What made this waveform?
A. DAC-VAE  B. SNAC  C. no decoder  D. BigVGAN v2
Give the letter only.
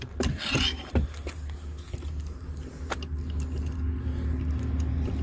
C